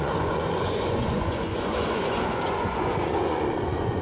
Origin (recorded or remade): remade